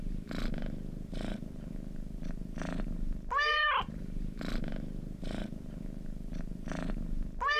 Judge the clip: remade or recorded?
remade